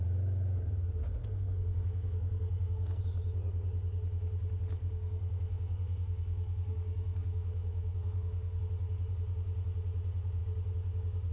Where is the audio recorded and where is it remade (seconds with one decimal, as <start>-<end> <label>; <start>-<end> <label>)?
0.0-1.2 recorded; 1.2-3.0 remade; 3.0-4.8 recorded; 4.8-8.6 remade; 8.6-11.3 recorded